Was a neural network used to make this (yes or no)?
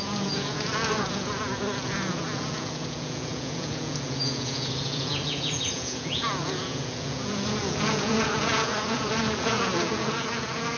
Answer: yes